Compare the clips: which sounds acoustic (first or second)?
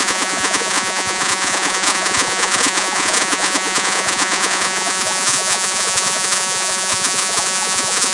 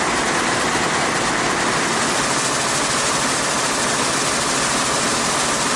second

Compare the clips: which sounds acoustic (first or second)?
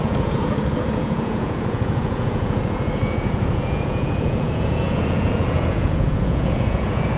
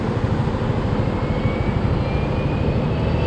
second